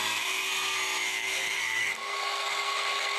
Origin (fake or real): fake